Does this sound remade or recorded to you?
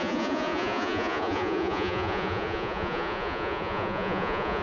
remade